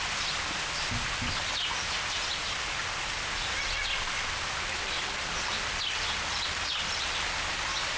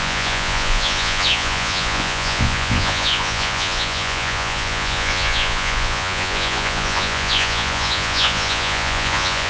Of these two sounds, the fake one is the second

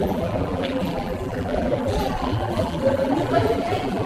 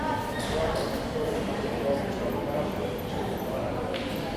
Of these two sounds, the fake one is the first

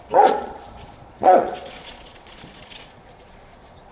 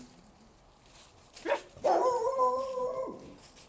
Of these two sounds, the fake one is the first